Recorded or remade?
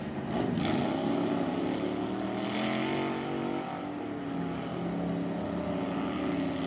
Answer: recorded